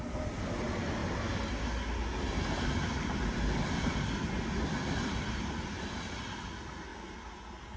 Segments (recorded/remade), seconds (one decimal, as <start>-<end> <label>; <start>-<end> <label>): 0.0-7.8 recorded